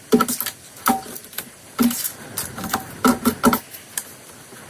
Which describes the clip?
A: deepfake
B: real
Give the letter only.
B